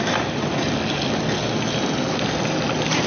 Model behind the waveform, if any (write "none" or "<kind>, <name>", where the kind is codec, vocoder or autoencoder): none